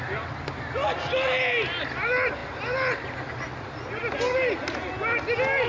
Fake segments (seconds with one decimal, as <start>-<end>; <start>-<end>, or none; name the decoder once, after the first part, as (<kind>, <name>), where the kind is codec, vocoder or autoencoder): none